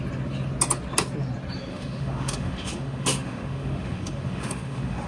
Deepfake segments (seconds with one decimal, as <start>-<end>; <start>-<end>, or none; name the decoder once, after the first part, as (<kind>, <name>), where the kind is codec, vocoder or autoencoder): 1.7-5.1 (autoencoder, DAC-VAE)